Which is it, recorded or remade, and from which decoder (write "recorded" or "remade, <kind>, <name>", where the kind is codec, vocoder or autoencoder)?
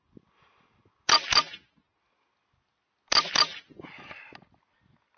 recorded